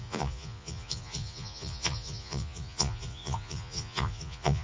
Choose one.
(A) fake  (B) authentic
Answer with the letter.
A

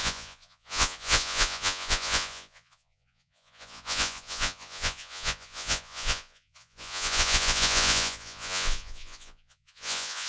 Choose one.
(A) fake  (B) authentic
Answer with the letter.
A